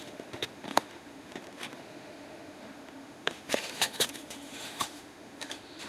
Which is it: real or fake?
fake